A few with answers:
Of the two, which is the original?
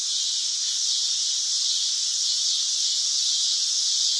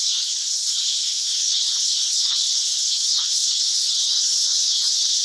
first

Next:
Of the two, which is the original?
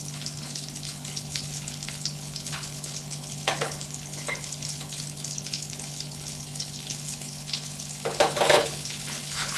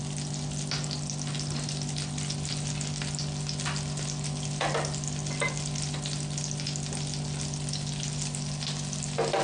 second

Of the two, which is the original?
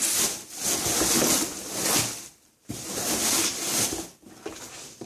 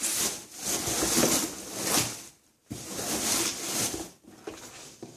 second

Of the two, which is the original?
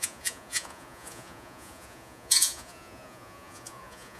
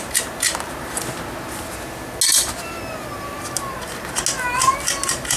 second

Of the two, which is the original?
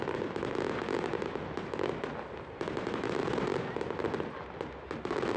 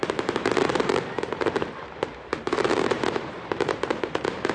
first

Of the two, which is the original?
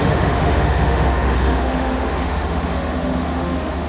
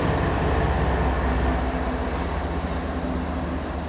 second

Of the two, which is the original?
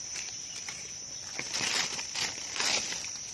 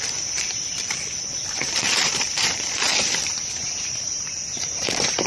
first